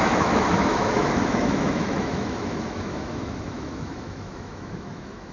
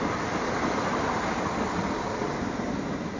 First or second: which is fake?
first